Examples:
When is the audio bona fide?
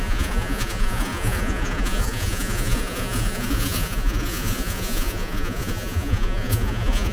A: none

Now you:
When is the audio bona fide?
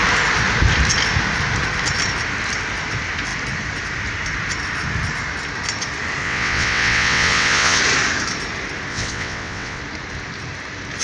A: 0.0-6.2; 7.8-8.9; 9.8-11.0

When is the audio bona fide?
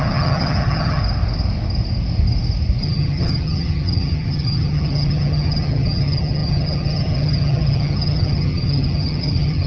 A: 1.0-2.8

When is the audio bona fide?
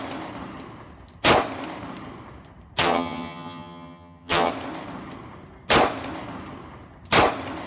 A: 0.0-2.8; 4.5-7.7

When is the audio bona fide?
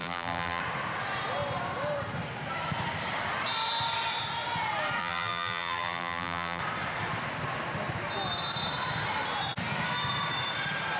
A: 0.6-5.0; 6.6-11.0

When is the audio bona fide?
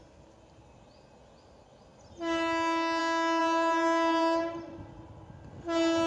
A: 0.0-3.4; 4.8-6.1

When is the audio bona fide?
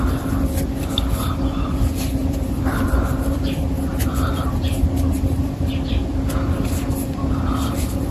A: 0.0-2.2; 5.7-8.1